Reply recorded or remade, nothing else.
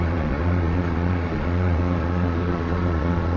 remade